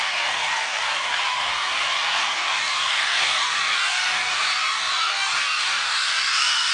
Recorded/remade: remade